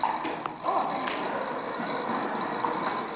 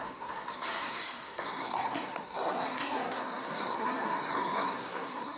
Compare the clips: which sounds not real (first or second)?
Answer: second